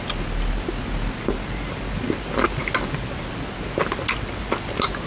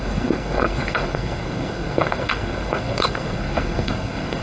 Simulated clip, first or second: second